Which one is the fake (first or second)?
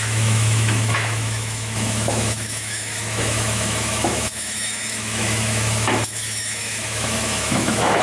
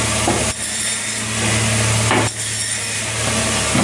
first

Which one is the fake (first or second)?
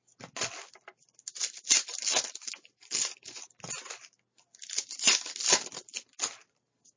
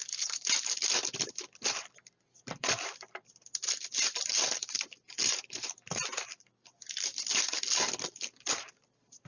second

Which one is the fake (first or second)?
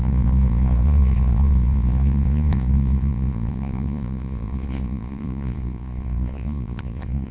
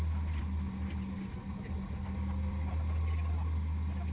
first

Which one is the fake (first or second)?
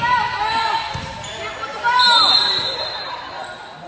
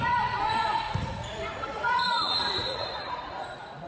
second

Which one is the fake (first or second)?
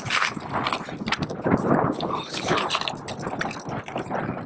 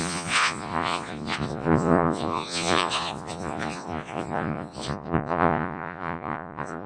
second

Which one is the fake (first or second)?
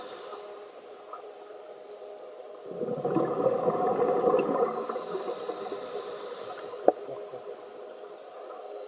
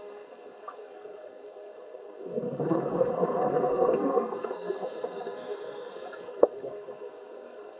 second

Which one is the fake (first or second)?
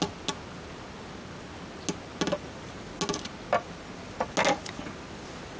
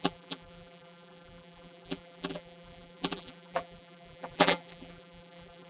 second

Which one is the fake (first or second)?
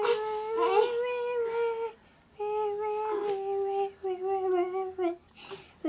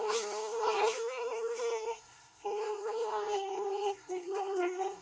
second